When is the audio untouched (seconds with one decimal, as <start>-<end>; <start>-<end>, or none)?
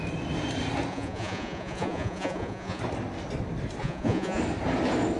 0.0-0.9; 2.8-3.8; 4.4-5.2